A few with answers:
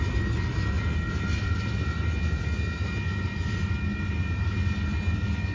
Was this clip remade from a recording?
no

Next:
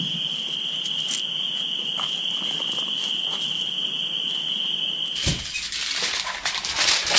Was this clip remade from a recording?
no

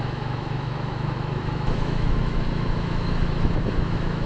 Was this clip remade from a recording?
yes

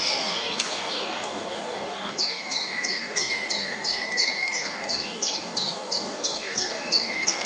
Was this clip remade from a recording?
yes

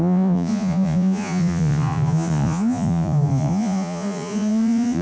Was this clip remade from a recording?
yes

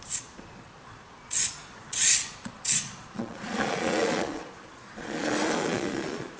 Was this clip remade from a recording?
yes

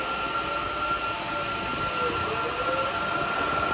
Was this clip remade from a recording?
no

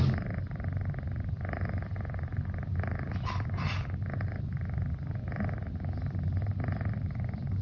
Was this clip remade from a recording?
no